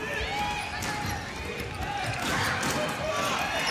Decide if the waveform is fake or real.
real